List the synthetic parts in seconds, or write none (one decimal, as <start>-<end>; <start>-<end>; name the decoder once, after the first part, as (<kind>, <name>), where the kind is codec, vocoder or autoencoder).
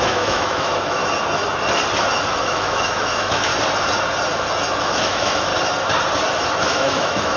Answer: 0.0-1.0 (autoencoder, DAC-VAE); 2.4-3.5; 4.8-5.5; 6.6-7.4